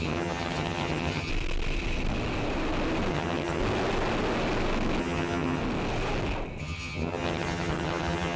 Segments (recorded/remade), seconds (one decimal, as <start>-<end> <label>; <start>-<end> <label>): 0.0-1.3 remade; 1.3-3.1 recorded; 3.1-3.6 remade; 3.6-5.0 recorded; 5.0-5.6 remade; 5.6-6.6 recorded; 6.6-8.4 remade